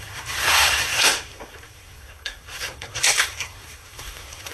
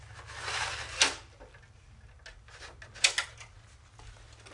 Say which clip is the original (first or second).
second